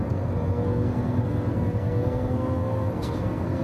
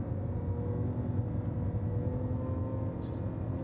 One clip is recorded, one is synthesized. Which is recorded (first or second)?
second